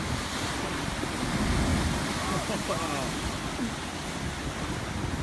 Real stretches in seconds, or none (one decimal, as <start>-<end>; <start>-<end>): 0.0-5.2